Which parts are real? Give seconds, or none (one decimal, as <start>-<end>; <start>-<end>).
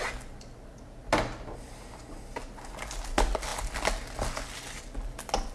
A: 0.0-5.5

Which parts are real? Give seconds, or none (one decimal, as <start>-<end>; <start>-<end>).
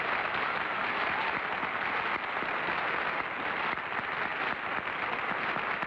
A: 0.0-5.9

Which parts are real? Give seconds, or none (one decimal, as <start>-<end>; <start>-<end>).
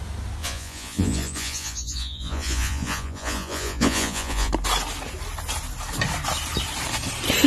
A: 0.0-0.4; 4.5-7.5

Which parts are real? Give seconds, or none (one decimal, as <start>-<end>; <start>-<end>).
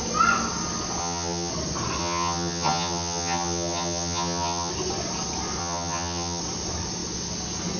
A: 0.0-1.0; 1.5-2.0; 4.7-5.6; 6.4-7.8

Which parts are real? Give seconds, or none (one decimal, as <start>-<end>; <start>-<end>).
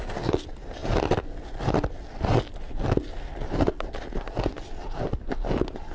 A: 0.0-5.9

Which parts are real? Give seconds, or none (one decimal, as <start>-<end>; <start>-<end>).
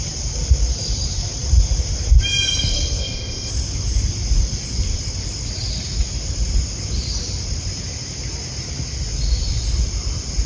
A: 0.0-3.0; 3.5-10.5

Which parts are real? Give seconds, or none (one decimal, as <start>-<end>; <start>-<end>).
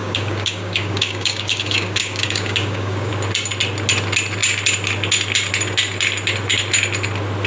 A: 3.1-7.5